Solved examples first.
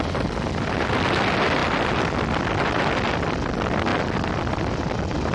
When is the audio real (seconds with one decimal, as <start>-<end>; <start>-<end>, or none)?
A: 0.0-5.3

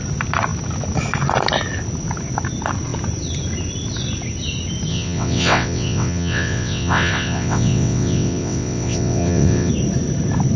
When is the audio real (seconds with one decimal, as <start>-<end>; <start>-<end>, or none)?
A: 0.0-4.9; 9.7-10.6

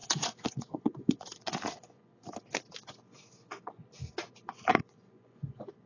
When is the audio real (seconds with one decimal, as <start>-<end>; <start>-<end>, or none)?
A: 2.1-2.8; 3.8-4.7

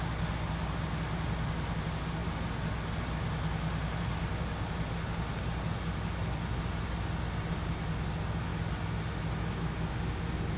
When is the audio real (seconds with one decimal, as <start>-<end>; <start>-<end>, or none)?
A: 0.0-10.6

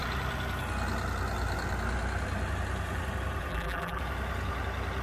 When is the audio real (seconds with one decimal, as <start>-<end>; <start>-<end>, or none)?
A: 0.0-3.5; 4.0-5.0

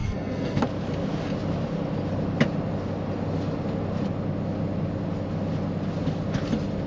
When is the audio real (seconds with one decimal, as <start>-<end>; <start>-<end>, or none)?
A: 0.6-6.9

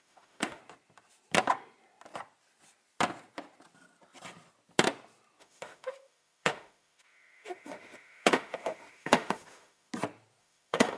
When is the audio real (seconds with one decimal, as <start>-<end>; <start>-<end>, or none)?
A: 0.6-5.4; 9.9-10.4